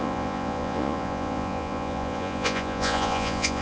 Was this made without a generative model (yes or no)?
no